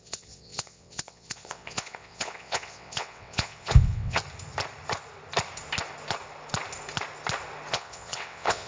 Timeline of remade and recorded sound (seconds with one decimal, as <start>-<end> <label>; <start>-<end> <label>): 0.0-4.2 remade; 4.2-7.7 recorded; 7.7-8.7 remade